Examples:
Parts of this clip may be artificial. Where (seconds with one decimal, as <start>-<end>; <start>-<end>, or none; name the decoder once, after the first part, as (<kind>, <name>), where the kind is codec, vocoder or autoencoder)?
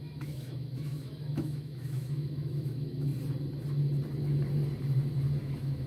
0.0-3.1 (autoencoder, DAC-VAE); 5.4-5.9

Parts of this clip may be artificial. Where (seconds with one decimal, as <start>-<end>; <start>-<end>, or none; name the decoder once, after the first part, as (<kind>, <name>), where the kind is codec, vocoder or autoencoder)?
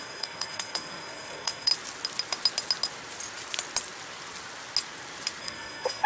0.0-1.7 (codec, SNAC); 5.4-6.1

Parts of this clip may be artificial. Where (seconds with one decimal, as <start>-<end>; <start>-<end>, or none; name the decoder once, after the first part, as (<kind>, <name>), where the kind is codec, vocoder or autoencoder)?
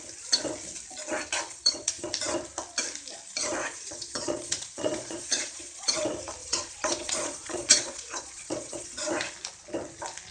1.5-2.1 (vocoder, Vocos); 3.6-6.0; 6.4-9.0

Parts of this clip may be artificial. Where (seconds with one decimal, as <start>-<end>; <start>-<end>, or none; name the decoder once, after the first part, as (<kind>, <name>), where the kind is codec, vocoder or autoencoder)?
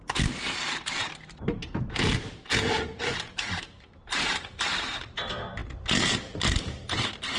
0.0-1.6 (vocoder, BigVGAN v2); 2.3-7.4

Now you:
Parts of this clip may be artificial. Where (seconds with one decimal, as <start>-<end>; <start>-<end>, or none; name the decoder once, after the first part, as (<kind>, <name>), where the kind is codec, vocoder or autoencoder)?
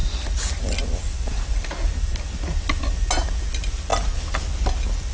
none